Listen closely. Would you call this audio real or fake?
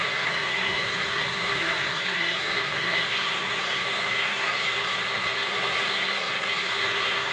fake